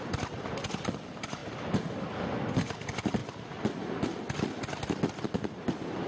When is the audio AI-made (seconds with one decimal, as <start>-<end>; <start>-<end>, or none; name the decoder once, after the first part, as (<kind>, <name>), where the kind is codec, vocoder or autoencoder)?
none